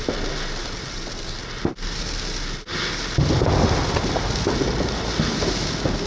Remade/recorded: recorded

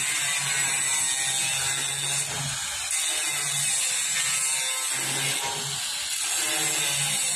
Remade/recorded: recorded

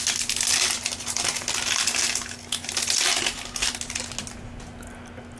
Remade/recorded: recorded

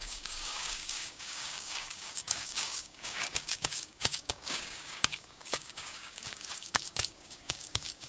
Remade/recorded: remade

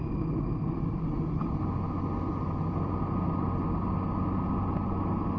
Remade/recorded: recorded